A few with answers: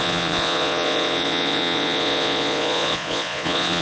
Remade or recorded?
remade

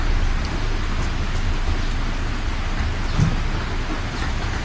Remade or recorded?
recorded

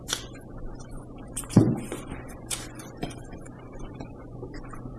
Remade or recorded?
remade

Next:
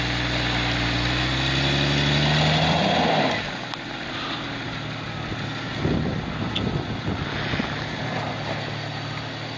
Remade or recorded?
recorded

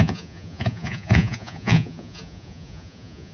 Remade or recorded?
remade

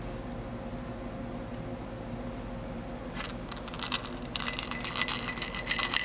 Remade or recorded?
recorded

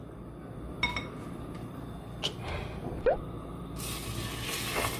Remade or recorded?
recorded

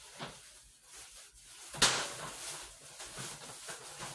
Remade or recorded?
recorded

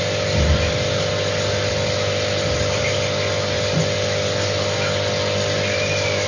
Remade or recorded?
recorded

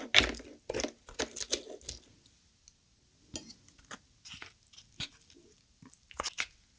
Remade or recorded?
recorded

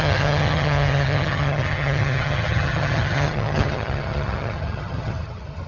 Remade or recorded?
remade